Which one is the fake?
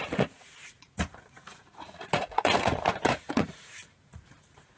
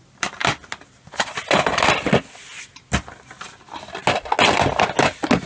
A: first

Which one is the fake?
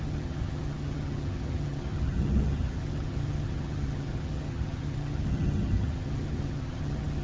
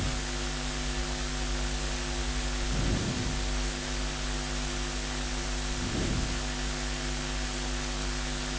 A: first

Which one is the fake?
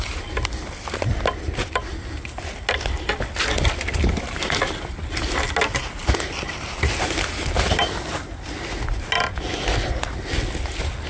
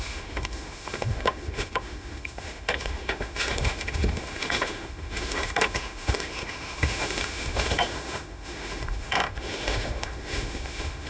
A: second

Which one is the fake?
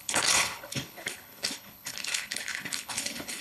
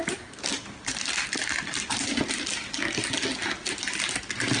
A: first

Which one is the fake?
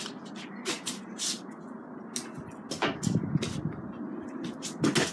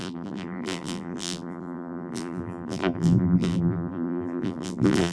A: second